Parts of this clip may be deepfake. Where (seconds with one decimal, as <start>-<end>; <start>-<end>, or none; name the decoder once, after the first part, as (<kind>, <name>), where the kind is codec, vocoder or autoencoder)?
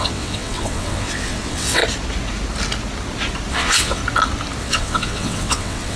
0.0-1.8 (vocoder, WaveNeXt); 3.5-4.0; 4.6-6.0